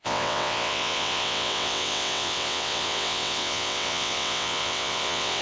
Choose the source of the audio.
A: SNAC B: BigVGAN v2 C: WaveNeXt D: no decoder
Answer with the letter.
C